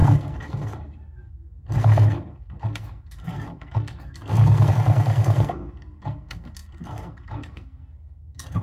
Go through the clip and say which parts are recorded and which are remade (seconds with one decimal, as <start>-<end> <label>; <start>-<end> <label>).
0.0-8.6 remade